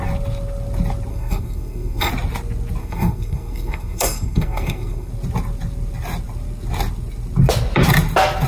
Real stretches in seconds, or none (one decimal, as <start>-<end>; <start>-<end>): 0.0-1.1; 2.1-2.8; 5.1-8.5